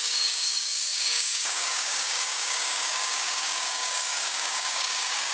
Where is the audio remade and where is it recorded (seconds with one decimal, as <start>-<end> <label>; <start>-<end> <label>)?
0.0-5.3 remade